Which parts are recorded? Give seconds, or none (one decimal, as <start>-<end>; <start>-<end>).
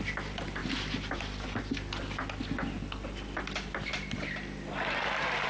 0.0-5.5